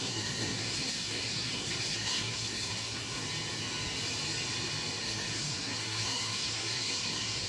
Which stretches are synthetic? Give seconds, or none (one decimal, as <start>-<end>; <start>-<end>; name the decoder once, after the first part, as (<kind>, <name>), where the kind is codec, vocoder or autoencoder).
0.0-3.2 (codec, SNAC); 5.0-7.5